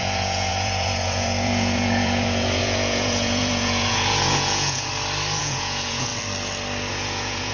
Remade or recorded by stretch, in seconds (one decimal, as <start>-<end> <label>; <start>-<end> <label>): 0.0-4.9 remade; 4.9-5.4 recorded; 5.4-6.1 remade; 6.1-6.9 recorded; 6.9-7.5 remade